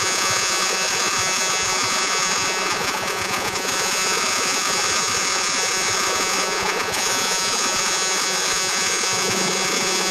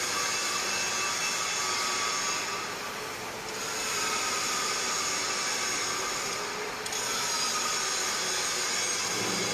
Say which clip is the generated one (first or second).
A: first